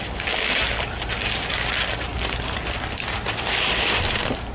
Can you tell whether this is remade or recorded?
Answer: recorded